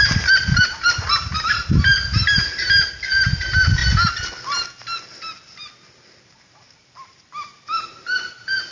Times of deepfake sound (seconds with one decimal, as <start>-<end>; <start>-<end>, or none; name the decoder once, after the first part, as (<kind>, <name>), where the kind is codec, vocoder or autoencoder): 0.0-3.8 (vocoder, BigVGAN v2); 6.3-8.7